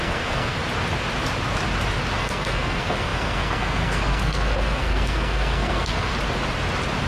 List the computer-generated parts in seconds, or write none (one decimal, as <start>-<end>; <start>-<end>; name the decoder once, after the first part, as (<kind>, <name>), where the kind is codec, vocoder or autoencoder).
0.0-0.6 (codec, SNAC); 2.2-6.1